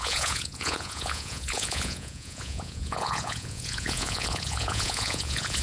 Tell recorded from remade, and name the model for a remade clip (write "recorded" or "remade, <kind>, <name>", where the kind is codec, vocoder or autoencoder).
remade, vocoder, Vocos